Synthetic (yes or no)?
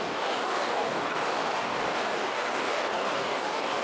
yes